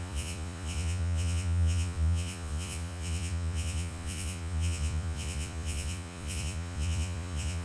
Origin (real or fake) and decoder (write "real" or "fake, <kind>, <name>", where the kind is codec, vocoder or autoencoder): fake, vocoder, Vocos